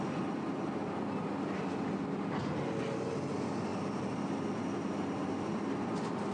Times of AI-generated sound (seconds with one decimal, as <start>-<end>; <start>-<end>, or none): none